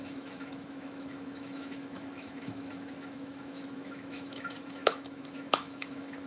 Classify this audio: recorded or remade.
remade